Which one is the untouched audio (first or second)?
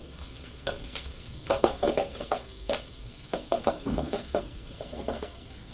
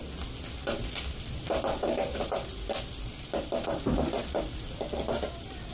second